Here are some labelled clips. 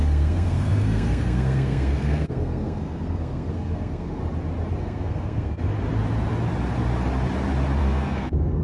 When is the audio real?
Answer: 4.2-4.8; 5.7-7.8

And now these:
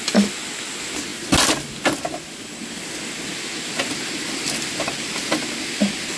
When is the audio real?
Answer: 0.0-6.2

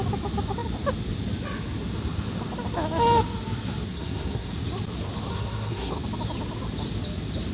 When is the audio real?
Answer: 0.0-3.9; 4.5-5.3; 5.9-7.5

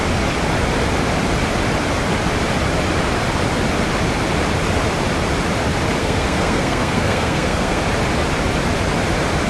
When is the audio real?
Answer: 0.0-6.0; 7.8-9.5